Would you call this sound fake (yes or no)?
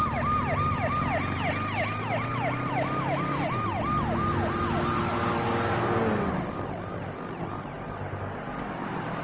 no